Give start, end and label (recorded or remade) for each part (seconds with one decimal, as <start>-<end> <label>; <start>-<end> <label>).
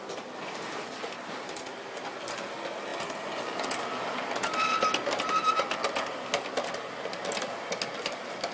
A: 0.0-8.5 recorded